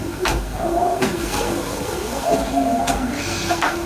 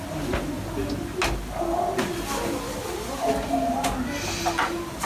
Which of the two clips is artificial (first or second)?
first